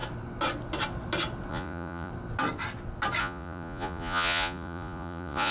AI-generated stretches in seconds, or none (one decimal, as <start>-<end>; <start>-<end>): 1.5-2.1; 3.2-5.5